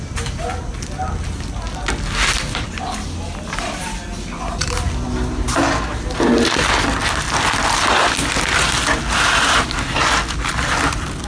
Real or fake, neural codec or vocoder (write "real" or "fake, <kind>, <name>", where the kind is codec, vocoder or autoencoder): real